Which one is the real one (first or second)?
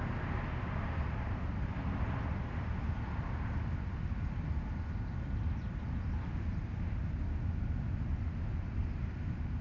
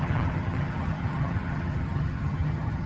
first